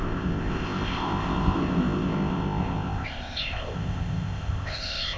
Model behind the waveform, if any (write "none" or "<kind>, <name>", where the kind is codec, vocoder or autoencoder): codec, ZipCodec